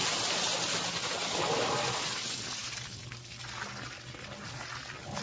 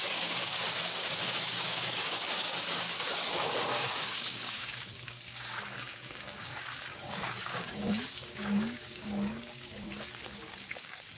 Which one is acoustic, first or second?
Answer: first